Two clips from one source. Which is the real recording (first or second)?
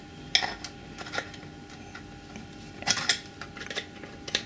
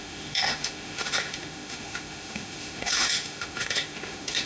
first